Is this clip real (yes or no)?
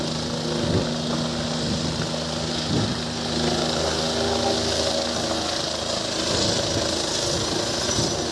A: yes